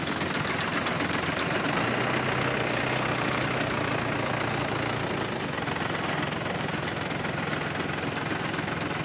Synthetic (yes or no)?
no